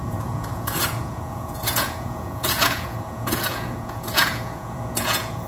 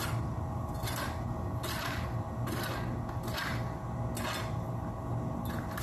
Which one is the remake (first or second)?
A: first